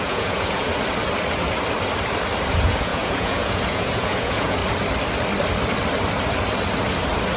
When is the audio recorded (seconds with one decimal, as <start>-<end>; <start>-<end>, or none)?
0.7-2.5; 4.6-7.4